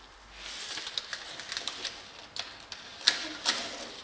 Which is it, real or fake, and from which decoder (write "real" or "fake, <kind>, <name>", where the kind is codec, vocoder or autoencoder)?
real